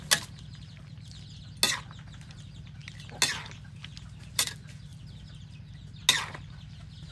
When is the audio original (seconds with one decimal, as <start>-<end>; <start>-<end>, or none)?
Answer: 0.0-7.1